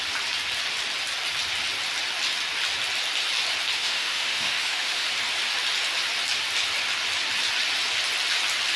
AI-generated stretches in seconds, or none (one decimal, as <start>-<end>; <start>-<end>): 3.8-5.1